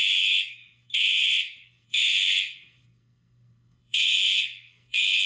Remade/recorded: remade